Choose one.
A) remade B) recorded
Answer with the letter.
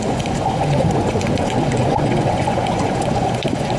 A